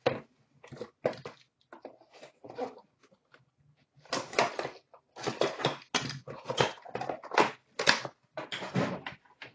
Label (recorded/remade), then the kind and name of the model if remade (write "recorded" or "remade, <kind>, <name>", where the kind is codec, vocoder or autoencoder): recorded